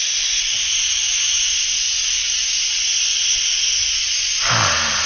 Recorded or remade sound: recorded